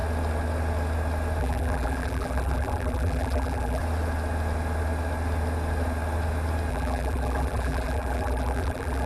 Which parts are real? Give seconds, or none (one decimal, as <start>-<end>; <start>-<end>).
0.0-1.4; 3.8-6.7